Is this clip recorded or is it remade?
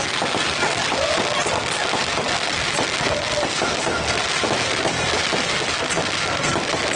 recorded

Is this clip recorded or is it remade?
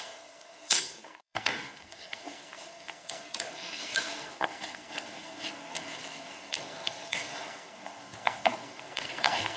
remade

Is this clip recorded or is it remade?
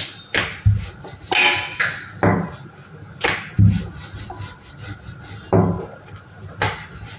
recorded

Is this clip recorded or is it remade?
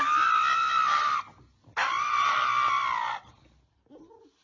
recorded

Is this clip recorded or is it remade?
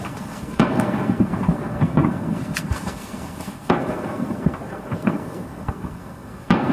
remade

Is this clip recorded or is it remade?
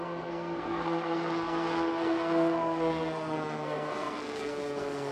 remade